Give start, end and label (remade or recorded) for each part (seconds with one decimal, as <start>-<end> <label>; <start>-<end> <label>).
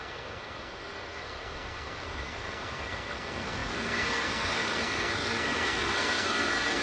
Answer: 0.0-6.8 remade